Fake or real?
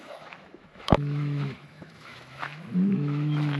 fake